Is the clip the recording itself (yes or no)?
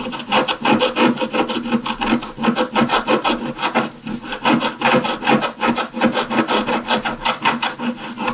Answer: yes